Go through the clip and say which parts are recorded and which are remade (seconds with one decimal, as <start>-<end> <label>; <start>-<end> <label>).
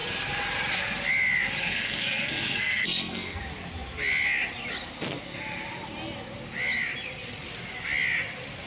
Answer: 0.0-1.6 recorded; 1.6-3.4 remade; 3.4-8.7 recorded